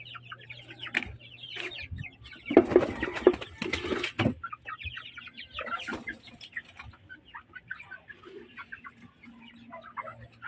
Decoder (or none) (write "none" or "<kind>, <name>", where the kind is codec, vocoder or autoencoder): none